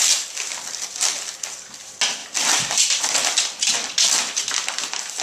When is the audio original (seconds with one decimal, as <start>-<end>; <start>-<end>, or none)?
0.0-5.2